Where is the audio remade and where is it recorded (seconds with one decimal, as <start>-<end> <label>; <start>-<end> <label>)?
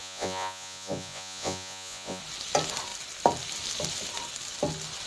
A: 0.0-2.2 remade; 2.2-5.1 recorded